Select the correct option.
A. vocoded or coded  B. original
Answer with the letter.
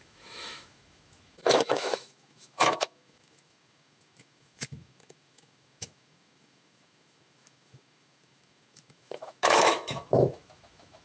A